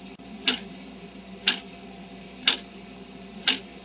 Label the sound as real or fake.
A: real